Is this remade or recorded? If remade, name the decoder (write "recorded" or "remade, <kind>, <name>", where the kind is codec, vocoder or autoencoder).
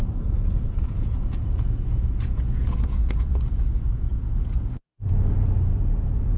remade, vocoder, Vocos